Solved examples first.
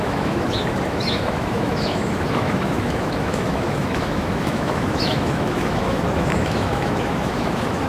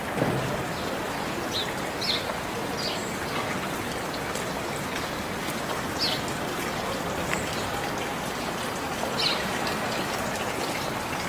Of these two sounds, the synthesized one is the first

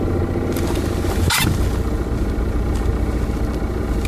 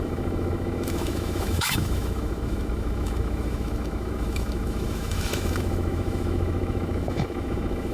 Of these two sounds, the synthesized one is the second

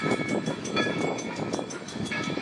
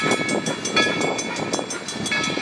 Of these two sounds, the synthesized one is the first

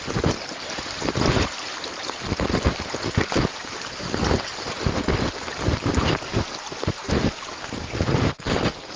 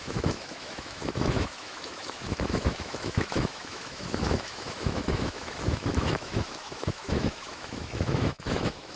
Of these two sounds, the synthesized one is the second